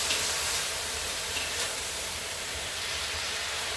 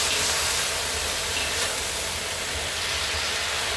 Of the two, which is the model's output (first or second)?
first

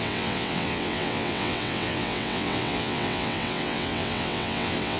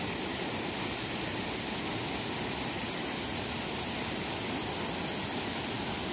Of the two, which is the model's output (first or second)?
first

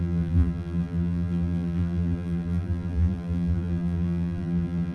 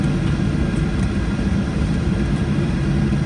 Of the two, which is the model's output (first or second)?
first